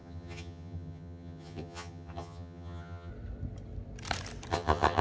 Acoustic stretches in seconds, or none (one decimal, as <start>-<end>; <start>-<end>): 3.1-4.5